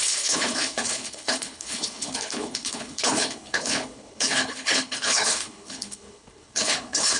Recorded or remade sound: remade